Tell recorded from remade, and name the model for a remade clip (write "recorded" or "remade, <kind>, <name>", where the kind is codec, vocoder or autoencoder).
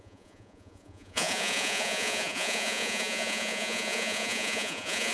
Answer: remade, vocoder, Vocos